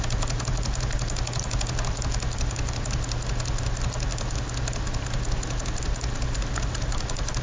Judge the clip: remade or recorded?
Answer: recorded